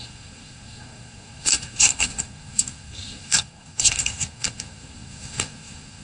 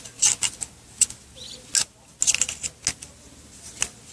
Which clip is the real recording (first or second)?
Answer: second